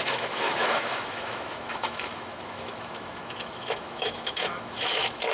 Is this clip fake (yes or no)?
yes